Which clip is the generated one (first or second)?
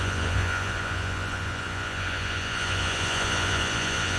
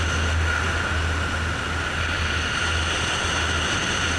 first